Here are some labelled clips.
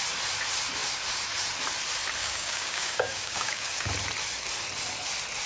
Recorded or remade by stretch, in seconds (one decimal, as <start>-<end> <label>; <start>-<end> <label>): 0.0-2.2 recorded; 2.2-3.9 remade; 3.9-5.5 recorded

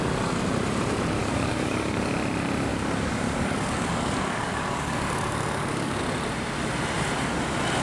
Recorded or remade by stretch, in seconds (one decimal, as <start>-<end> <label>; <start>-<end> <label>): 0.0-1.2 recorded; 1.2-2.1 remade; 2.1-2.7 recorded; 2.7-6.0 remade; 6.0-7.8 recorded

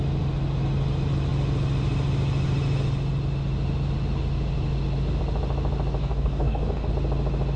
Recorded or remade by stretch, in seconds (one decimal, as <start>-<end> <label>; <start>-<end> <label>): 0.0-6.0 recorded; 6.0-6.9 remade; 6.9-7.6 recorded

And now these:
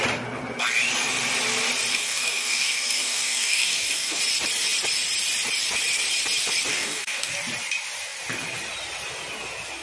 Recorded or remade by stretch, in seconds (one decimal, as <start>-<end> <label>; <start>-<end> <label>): 0.0-1.9 recorded; 1.9-4.2 remade; 4.2-6.7 recorded; 6.7-7.3 remade; 7.3-9.8 recorded

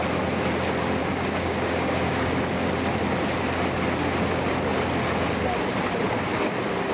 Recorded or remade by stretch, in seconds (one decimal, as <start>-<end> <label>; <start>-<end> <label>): 0.0-1.0 recorded; 1.0-2.1 remade; 2.1-6.9 recorded

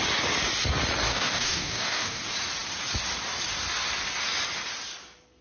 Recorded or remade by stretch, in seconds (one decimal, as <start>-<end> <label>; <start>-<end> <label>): 0.0-1.1 recorded; 1.1-2.2 remade; 2.2-5.4 recorded

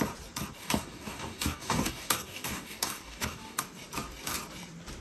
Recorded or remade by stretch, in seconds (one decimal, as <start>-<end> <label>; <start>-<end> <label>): 0.0-0.6 recorded; 0.6-3.6 remade; 3.6-5.0 recorded